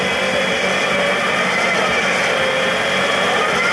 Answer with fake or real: real